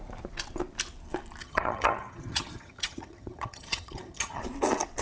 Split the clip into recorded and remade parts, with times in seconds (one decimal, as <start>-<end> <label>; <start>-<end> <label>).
0.0-1.4 recorded; 1.4-4.4 remade; 4.4-5.0 recorded